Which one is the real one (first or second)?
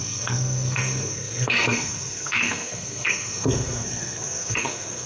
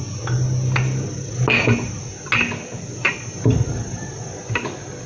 second